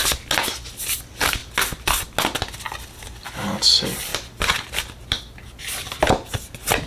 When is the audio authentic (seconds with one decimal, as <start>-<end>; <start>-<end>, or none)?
0.0-6.9